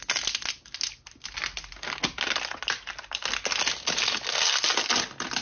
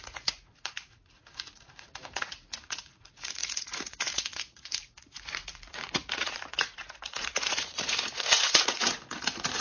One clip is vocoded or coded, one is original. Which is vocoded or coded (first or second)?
second